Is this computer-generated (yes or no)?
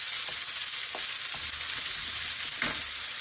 no